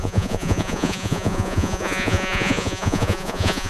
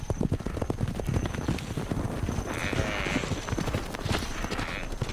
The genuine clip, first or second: second